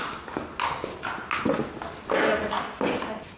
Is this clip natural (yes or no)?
yes